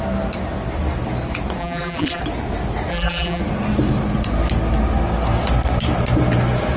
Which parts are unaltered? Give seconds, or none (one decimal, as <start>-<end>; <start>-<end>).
0.0-1.6; 2.2-2.9; 3.4-6.8